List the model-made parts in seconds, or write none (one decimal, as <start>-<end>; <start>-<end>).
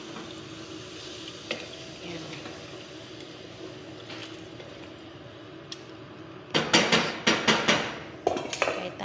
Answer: none